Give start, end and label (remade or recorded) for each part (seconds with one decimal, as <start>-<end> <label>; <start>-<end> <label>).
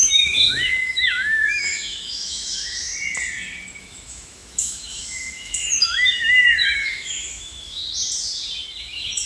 0.0-2.9 remade; 2.9-3.8 recorded; 3.8-7.8 remade; 7.8-8.8 recorded; 8.8-9.3 remade